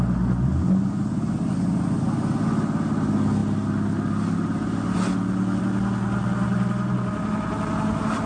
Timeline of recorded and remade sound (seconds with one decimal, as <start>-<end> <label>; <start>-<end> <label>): 0.0-8.3 recorded